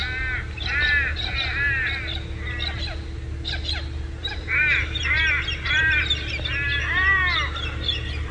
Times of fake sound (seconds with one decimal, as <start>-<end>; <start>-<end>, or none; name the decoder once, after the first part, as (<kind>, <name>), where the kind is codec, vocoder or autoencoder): 4.2-6.3 (vocoder, BigVGAN v2)